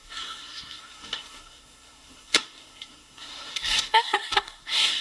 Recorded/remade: remade